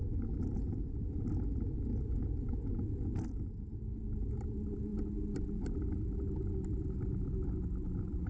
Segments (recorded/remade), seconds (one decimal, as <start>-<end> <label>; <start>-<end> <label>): 0.0-8.3 recorded